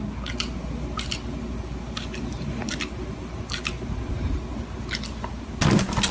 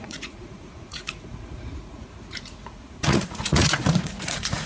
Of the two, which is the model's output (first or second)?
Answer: second